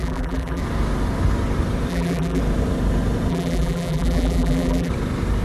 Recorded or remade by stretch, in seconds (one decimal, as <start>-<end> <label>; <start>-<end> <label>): 0.0-0.6 remade; 0.6-1.9 recorded; 1.9-2.4 remade; 2.4-3.3 recorded; 3.3-4.9 remade; 4.9-5.4 recorded